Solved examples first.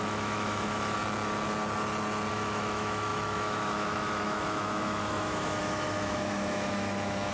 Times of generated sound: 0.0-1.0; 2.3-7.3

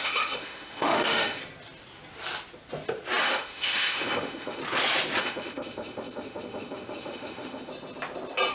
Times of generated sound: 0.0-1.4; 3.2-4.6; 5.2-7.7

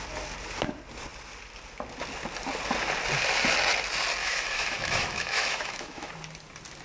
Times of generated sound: 4.2-6.1

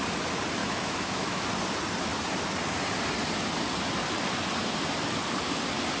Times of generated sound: 0.6-1.4

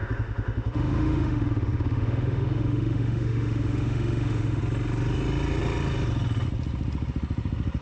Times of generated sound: 0.0-4.6